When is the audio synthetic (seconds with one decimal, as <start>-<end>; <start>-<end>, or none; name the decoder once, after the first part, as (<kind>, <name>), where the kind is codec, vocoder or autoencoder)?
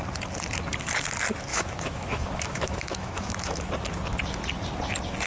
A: 1.5-3.7 (autoencoder, DAC-VAE)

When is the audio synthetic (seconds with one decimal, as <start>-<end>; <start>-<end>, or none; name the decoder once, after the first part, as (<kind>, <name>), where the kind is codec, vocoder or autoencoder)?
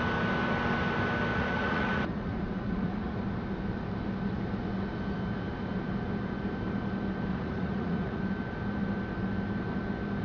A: 1.3-3.2 (vocoder, Vocos); 7.3-8.2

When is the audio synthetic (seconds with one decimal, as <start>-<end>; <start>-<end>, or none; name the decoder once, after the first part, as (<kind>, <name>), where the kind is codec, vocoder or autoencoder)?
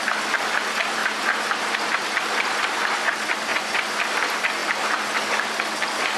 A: 3.5-4.0 (vocoder, Vocos)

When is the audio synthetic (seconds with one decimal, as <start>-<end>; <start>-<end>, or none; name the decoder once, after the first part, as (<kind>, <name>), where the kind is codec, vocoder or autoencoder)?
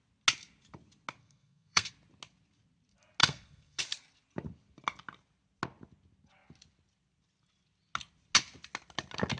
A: 1.2-1.9 (codec, SNAC); 3.2-3.8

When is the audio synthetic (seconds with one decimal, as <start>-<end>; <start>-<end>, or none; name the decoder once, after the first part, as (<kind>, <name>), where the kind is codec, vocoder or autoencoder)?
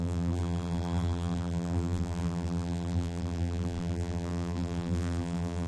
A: 0.0-5.7 (vocoder, BigVGAN v2)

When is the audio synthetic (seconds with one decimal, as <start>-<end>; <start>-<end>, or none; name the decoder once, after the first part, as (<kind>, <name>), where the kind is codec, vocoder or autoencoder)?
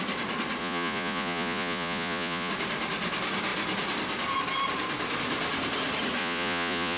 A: 0.6-2.5 (vocoder, Vocos); 6.2-7.0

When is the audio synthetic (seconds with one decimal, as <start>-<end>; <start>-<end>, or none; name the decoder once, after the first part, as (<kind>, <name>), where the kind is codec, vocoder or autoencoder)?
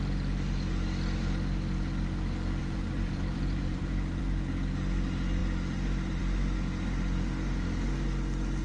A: 2.6-4.2 (vocoder, BigVGAN v2)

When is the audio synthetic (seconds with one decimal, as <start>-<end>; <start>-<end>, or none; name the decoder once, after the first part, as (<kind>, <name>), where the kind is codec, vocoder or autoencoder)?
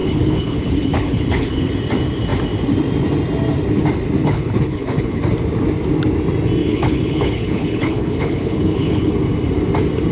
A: 0.0-1.7 (codec, HILCodec); 4.2-5.2; 6.6-9.1